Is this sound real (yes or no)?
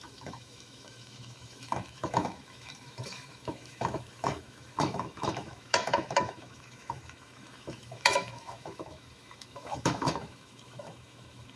no